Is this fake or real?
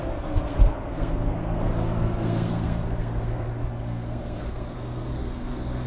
fake